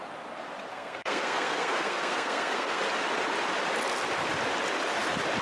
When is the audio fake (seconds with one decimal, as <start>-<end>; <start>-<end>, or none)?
0.7-2.8